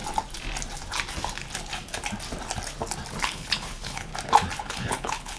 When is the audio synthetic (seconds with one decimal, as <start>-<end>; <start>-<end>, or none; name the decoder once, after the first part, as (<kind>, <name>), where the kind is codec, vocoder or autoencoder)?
3.2-4.1 (codec, HILCodec); 4.6-5.4